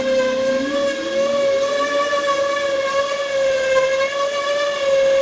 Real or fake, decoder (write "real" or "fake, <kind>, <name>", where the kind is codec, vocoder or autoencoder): real